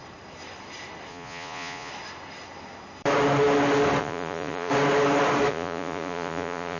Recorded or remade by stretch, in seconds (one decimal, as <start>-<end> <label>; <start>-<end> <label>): 0.0-1.1 recorded; 1.1-1.9 remade; 1.9-4.0 recorded; 4.0-4.7 remade; 4.7-5.5 recorded; 5.5-6.8 remade